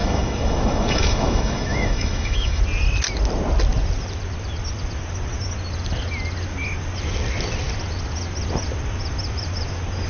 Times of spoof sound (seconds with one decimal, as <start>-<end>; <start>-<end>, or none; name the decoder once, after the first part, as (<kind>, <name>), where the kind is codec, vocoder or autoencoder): 0.0-2.6 (autoencoder, DAC-VAE)